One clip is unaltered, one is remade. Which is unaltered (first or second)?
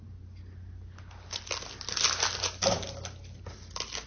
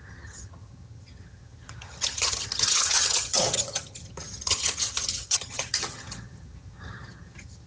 first